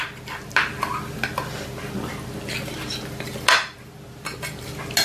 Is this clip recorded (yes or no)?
yes